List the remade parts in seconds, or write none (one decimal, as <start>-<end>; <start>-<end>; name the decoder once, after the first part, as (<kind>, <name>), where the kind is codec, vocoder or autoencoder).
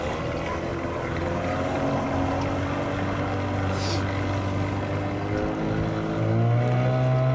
0.7-1.8 (vocoder, BigVGAN v2)